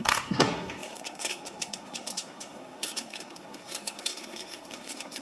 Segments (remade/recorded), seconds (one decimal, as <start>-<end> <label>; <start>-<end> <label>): 0.0-5.2 remade